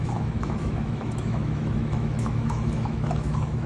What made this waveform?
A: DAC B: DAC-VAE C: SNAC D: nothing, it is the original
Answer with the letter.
B